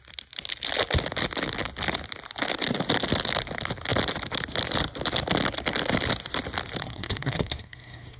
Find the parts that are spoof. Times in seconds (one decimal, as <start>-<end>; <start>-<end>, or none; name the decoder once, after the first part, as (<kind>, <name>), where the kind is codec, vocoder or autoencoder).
6.8-8.2 (codec, SNAC)